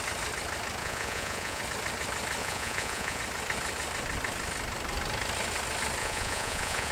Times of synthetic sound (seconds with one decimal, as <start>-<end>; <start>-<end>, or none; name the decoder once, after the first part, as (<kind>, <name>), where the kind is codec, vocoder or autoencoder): 0.8-1.6 (vocoder, Vocos); 2.4-3.2; 6.0-6.9